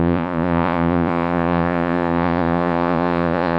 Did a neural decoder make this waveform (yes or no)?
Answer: yes